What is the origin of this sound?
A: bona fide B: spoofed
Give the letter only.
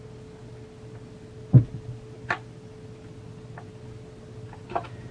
A